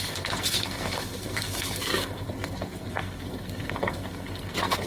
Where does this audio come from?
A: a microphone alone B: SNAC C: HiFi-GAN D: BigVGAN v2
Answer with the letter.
B